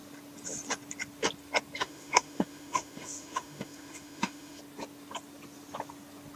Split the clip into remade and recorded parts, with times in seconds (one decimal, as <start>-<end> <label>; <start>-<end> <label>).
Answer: 0.0-1.8 recorded; 1.8-4.6 remade; 4.6-6.4 recorded